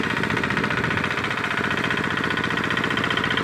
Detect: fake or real real